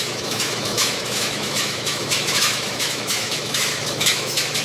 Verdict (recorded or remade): remade